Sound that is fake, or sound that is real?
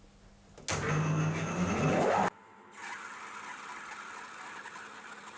real